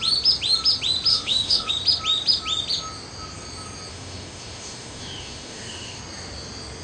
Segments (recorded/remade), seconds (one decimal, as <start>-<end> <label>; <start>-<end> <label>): 0.0-1.1 recorded; 1.1-1.7 remade; 1.7-3.9 recorded; 3.9-6.0 remade; 6.0-6.8 recorded